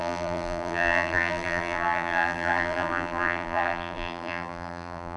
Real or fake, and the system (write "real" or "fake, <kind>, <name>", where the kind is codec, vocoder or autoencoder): fake, vocoder, BigVGAN v2